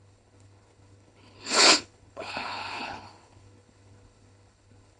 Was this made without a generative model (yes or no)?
no